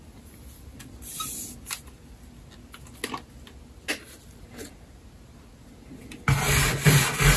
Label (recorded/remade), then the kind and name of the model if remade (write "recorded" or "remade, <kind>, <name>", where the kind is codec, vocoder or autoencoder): recorded